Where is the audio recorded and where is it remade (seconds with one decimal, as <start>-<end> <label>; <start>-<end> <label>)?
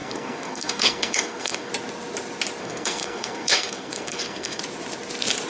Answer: 0.0-1.7 remade; 1.7-2.6 recorded; 2.6-4.6 remade; 4.6-5.5 recorded